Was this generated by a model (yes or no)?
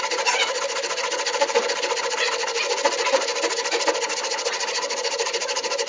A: no